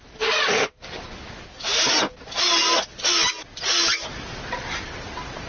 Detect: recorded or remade recorded